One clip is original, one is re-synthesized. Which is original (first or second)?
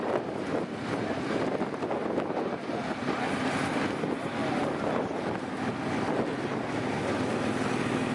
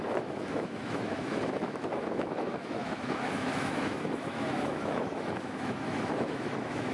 first